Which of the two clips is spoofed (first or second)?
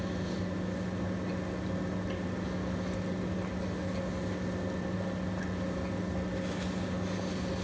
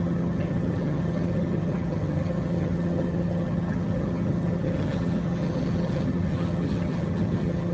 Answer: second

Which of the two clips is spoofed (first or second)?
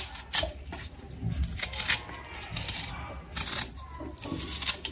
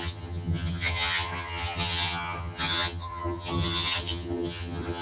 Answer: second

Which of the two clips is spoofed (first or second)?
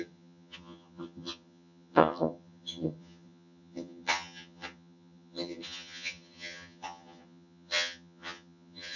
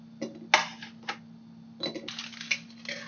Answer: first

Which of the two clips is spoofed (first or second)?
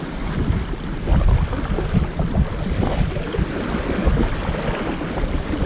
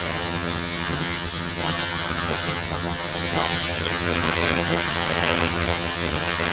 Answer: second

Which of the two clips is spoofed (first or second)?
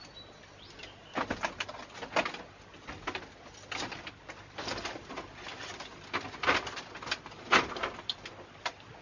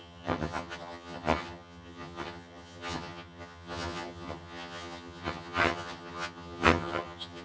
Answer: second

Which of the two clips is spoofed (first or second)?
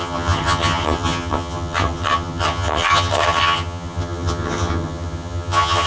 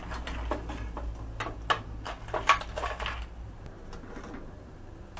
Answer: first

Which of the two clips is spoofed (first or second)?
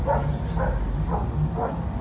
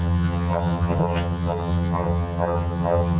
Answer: second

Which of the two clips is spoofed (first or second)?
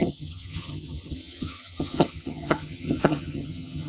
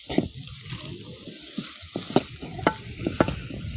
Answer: first